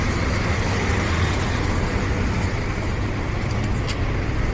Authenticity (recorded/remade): recorded